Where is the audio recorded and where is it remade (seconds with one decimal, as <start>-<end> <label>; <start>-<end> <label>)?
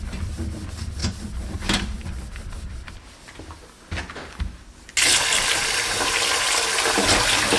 0.0-7.6 recorded